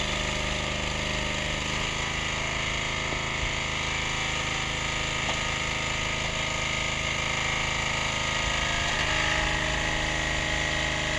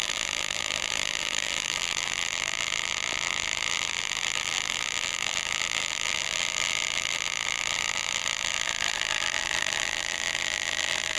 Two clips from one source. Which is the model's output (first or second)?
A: second